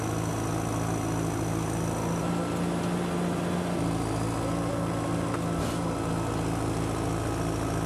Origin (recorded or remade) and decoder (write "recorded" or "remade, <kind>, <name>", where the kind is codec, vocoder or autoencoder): recorded